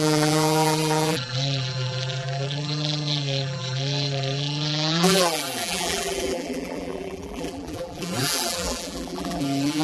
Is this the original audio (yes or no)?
no